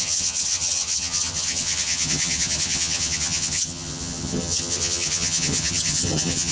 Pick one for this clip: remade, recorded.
remade